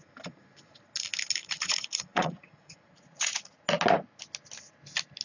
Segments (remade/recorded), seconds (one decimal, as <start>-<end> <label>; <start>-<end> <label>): 0.0-1.4 recorded; 1.4-3.6 remade; 3.6-5.2 recorded